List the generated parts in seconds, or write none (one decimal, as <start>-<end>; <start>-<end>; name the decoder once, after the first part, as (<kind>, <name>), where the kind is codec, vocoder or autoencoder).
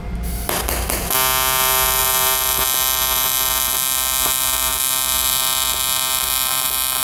none